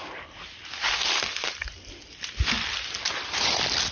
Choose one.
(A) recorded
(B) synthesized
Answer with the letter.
A